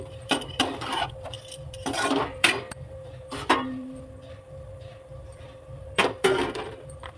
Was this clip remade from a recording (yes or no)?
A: yes